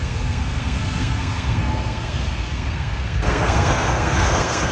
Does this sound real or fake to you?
fake